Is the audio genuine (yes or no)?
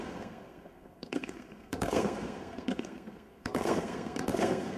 no